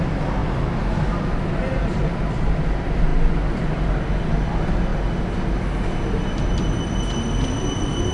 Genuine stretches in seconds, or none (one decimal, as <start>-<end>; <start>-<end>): 0.0-8.1